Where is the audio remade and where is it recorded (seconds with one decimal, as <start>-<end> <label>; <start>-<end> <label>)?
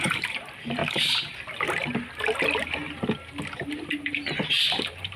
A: 0.0-0.8 remade; 0.8-3.9 recorded; 3.9-5.2 remade